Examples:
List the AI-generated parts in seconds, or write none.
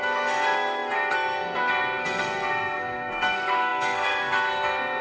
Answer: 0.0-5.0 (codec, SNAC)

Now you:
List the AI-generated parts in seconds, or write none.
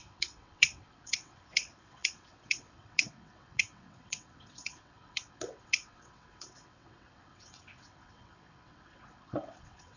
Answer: 0.0-10.0 (vocoder, WaveNeXt)